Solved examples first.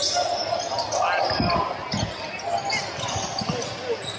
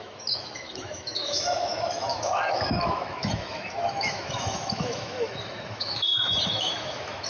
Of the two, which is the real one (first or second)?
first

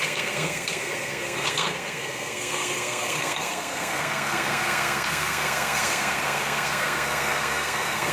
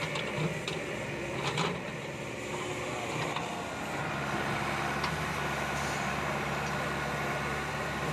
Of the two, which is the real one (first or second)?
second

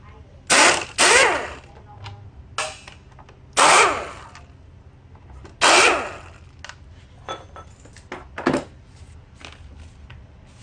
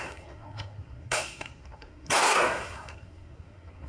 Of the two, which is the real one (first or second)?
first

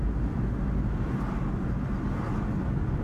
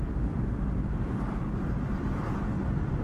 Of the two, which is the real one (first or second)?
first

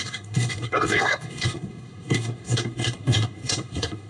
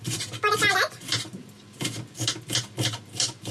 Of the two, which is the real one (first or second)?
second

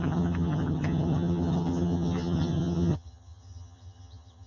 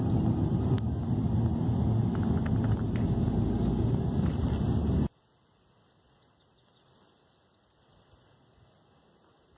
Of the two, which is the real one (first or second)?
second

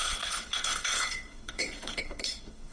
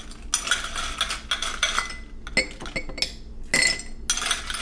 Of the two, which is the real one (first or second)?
second